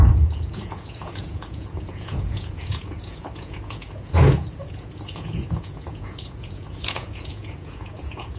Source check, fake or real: fake